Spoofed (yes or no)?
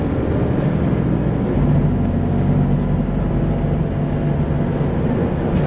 no